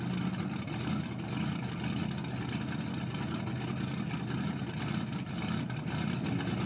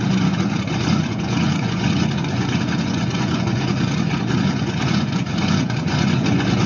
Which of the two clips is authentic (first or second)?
first